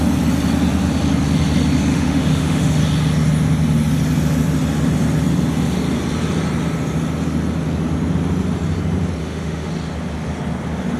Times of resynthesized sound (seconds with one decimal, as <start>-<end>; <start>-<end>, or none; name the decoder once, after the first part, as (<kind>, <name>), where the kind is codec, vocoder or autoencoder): 1.9-2.8 (autoencoder, DAC-VAE); 9.2-9.7